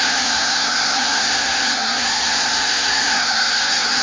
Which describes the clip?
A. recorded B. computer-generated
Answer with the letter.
B